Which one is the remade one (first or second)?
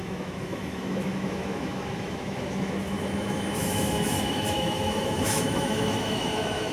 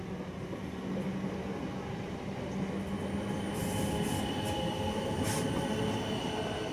first